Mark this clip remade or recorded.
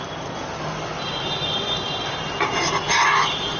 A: recorded